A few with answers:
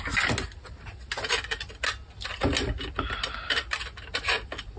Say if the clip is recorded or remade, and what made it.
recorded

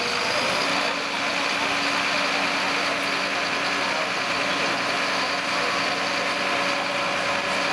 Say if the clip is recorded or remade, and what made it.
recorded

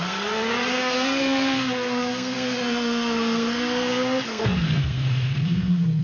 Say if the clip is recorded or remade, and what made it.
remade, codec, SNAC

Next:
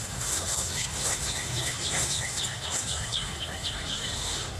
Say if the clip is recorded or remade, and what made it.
remade, codec, SNAC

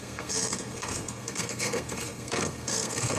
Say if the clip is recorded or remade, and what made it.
remade, codec, SNAC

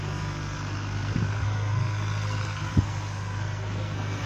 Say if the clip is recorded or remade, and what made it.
remade, codec, SNAC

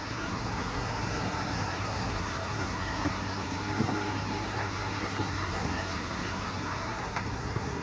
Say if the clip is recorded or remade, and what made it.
remade, codec, SNAC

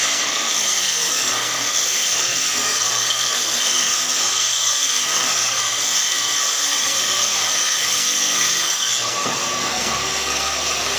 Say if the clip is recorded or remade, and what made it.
remade, codec, SNAC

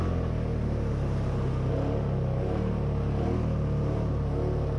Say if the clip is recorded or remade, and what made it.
recorded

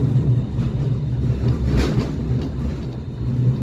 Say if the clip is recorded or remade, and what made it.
recorded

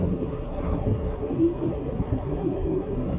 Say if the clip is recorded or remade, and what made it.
remade, codec, SNAC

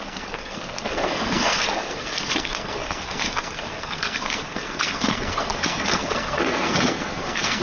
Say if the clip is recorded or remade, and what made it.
remade, codec, SNAC